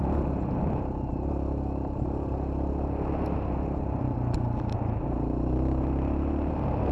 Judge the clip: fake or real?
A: real